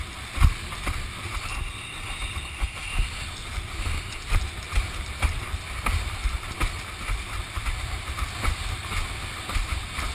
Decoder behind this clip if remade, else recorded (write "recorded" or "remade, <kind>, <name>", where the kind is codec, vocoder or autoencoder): recorded